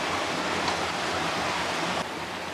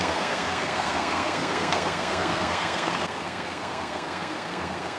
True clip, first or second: first